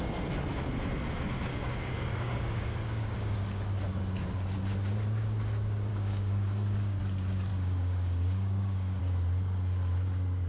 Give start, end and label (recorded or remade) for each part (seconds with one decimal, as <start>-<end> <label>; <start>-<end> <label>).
0.0-1.5 recorded; 1.5-3.7 remade; 3.7-5.9 recorded; 5.9-7.0 remade; 7.0-7.5 recorded; 7.5-9.0 remade; 9.0-10.5 recorded